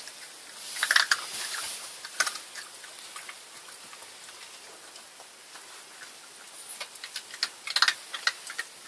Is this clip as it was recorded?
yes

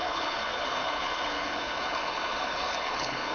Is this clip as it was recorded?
no